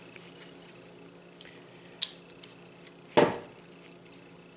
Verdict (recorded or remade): recorded